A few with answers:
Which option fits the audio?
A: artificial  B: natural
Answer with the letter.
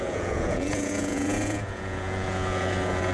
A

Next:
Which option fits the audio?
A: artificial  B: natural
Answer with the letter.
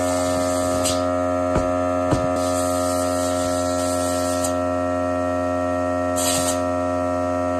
B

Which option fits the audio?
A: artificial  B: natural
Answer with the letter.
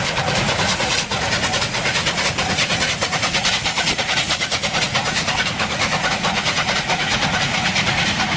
A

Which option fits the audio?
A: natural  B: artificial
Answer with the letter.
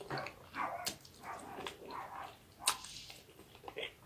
A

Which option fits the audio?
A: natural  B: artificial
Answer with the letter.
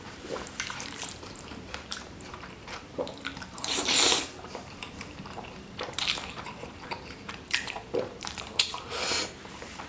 B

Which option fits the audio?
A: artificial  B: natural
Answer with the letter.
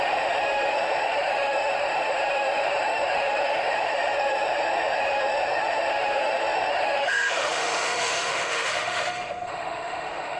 A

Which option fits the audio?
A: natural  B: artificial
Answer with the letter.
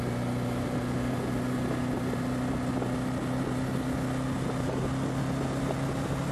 A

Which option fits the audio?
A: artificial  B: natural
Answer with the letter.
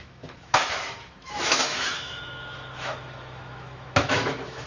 A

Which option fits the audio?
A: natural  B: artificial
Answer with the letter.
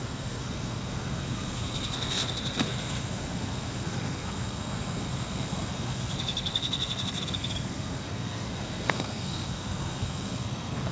B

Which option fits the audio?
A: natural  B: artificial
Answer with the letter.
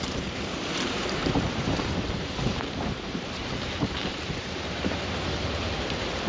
B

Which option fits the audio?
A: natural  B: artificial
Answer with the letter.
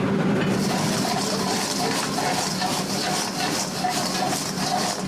A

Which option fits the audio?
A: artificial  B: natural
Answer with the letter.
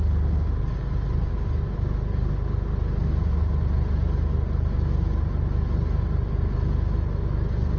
B